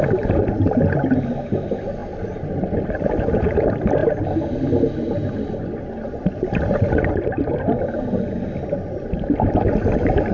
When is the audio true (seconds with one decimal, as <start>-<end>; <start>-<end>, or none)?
0.0-10.3